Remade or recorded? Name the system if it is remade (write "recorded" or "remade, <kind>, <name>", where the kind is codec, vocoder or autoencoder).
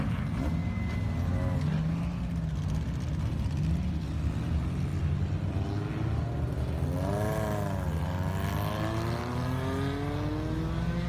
recorded